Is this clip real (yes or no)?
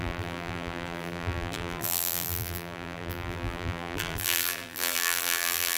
no